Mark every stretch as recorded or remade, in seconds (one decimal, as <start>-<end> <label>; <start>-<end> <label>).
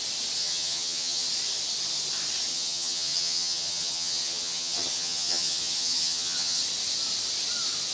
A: 0.0-0.4 recorded; 0.4-1.3 remade; 1.3-2.5 recorded; 2.5-6.6 remade; 6.6-7.9 recorded